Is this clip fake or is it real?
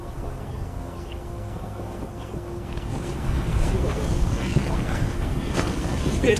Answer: fake